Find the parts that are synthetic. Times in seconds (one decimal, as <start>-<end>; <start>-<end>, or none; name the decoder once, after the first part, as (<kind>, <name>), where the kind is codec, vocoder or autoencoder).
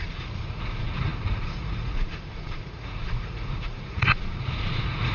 0.0-5.1 (vocoder, Vocos)